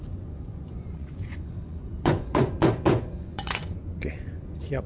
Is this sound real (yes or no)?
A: no